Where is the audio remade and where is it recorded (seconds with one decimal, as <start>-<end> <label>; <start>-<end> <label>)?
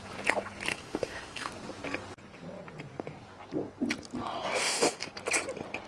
0.0-0.7 recorded; 0.7-1.5 remade; 1.5-4.6 recorded; 4.6-5.1 remade; 5.1-5.9 recorded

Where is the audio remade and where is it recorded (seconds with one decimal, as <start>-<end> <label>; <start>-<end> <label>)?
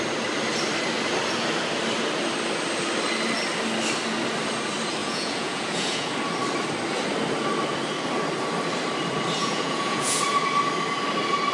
0.0-5.0 recorded; 5.0-6.1 remade; 6.1-9.4 recorded; 9.4-10.2 remade; 10.2-11.5 recorded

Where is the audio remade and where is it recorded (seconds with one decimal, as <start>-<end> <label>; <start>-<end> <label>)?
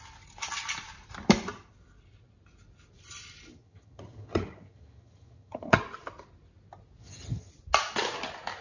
0.0-3.5 recorded; 3.5-5.8 remade; 5.8-7.0 recorded; 7.0-7.5 remade; 7.5-8.6 recorded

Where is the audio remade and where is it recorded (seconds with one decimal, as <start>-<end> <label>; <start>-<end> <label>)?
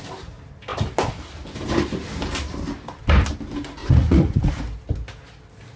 0.0-3.8 recorded; 3.8-4.5 remade; 4.5-5.8 recorded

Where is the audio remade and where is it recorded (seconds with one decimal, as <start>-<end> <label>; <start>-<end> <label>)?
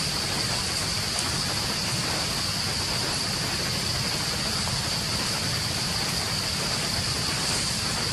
0.0-8.1 recorded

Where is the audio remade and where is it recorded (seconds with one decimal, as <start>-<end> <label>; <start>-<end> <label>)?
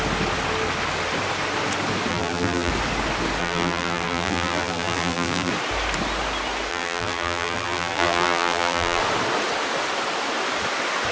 0.0-2.1 recorded; 2.1-2.7 remade; 2.7-3.4 recorded; 3.4-5.5 remade; 5.5-6.7 recorded; 6.7-9.0 remade; 9.0-11.1 recorded